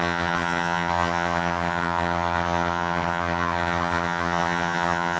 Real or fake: fake